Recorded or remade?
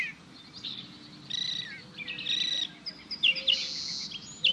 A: recorded